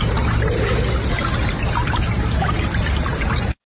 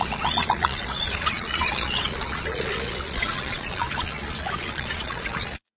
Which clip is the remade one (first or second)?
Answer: second